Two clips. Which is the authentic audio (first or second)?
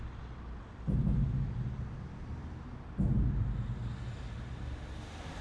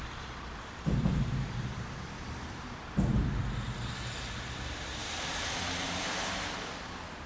first